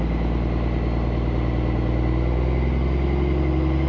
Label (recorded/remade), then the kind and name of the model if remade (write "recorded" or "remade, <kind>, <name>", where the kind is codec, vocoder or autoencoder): recorded